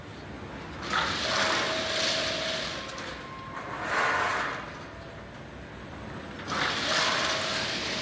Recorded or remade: recorded